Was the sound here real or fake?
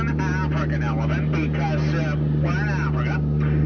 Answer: real